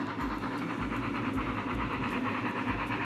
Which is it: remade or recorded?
recorded